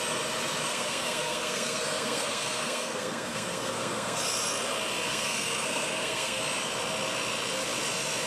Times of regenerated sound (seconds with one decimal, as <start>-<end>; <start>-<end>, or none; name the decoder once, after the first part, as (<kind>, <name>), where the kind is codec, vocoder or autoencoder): 0.7-4.2 (codec, SNAC); 5.1-6.4